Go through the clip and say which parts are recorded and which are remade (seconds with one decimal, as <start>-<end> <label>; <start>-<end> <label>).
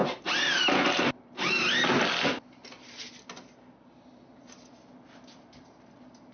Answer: 0.0-6.3 recorded